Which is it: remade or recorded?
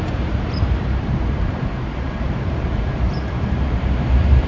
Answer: remade